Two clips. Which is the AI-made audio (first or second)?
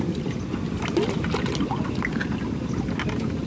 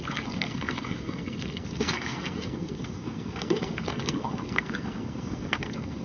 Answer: second